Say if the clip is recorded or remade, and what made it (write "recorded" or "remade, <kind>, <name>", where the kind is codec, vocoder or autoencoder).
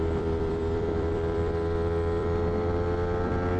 remade, vocoder, BigVGAN v2